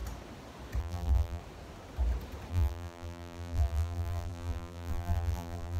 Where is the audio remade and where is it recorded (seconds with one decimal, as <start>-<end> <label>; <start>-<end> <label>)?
0.0-0.8 recorded; 0.8-1.4 remade; 1.4-2.5 recorded; 2.5-5.8 remade